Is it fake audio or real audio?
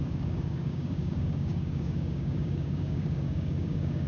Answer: fake